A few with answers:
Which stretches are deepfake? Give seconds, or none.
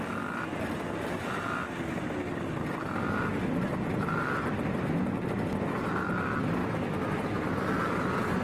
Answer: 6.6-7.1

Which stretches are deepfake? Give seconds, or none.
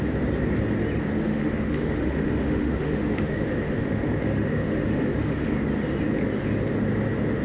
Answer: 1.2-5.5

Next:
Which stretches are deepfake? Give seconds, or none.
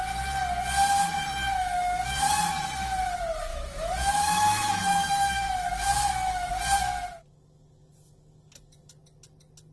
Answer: 1.6-2.3; 3.5-6.5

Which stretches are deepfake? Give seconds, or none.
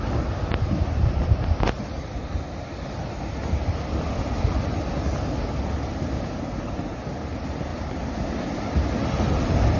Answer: none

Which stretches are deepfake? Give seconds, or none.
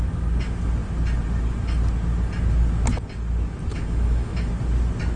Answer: 3.7-4.5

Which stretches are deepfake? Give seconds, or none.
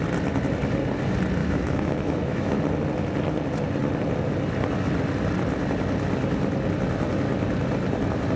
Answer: 1.4-2.6